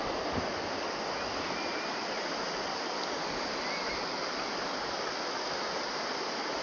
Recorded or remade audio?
recorded